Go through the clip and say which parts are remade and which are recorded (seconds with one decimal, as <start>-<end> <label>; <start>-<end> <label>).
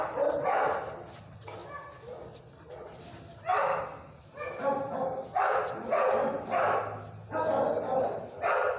0.0-8.8 recorded